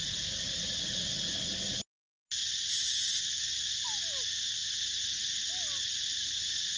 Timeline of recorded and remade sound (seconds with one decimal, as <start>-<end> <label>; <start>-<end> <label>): 0.0-6.8 recorded